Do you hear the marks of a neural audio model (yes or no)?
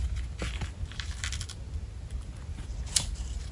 no